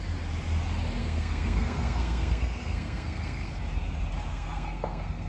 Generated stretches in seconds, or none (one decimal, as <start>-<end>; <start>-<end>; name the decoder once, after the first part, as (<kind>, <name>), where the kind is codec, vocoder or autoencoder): 1.0-3.5 (codec, SNAC); 4.3-5.3